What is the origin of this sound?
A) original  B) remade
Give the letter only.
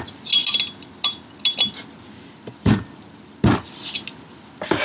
A